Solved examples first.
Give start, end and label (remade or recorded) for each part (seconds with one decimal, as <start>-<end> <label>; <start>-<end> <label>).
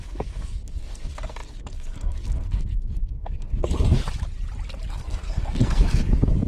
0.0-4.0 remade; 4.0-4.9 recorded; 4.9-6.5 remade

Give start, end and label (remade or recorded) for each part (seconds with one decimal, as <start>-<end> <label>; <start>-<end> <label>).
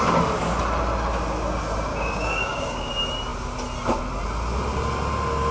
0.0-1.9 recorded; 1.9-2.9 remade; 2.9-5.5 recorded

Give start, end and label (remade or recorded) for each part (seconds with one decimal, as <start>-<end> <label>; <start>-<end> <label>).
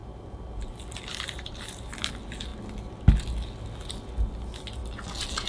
0.0-2.1 remade; 2.1-5.5 recorded